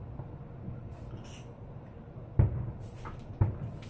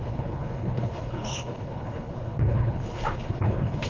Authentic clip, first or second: first